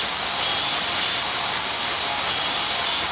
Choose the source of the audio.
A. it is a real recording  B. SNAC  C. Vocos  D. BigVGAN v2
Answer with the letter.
A